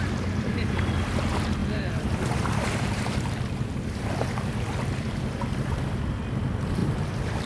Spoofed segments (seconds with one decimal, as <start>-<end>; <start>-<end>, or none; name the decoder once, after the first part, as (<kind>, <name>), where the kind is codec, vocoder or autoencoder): 1.6-6.1 (vocoder, BigVGAN v2); 6.8-7.5